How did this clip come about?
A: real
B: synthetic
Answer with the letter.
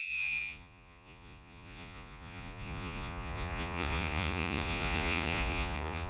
B